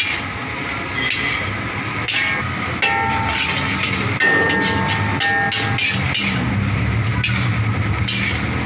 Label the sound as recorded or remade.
recorded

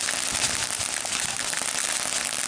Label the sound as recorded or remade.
recorded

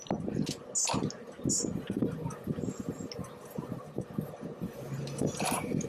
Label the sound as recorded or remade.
recorded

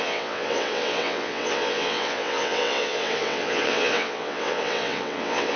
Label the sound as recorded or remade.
remade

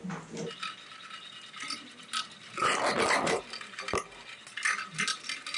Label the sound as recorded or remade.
recorded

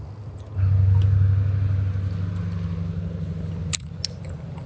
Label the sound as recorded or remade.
recorded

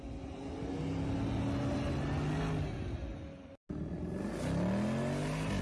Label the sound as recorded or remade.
recorded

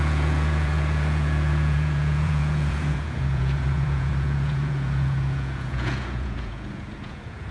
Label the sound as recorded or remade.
remade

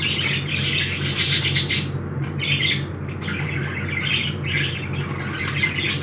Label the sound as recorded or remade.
recorded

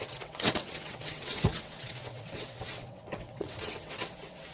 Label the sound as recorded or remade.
remade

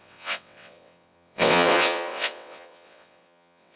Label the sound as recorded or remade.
remade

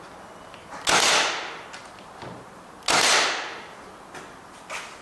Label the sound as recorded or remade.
recorded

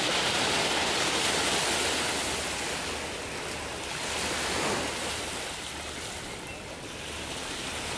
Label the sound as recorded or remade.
recorded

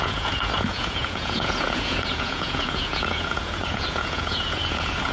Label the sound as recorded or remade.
remade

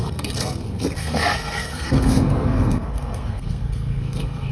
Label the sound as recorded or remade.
remade